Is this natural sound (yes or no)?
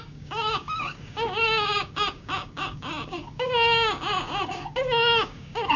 no